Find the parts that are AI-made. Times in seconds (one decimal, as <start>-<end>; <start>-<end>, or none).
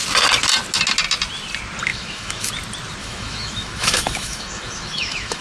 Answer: 1.9-2.5; 3.0-5.4